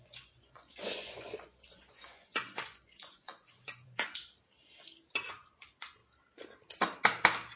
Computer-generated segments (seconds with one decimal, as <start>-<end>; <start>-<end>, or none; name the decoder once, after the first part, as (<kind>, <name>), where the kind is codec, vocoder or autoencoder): 0.0-4.2 (vocoder, Vocos); 5.3-6.0